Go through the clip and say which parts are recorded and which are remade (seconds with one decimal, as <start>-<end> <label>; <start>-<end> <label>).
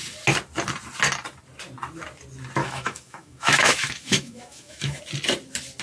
0.0-2.6 recorded; 2.6-5.0 remade; 5.0-5.8 recorded